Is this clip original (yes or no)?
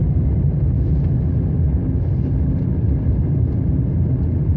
yes